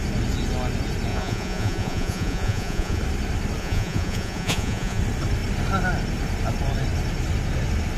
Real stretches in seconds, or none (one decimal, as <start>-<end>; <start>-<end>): 0.0-1.1; 3.0-3.6; 5.0-8.0